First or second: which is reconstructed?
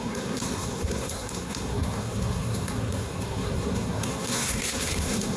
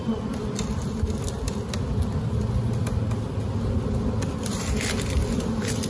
first